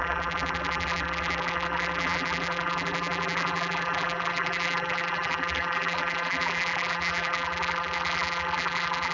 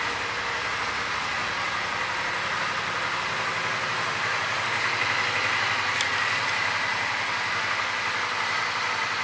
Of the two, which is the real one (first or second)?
second